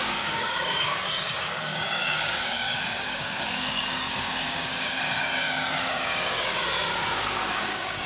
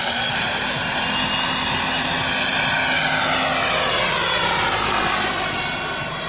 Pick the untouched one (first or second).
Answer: second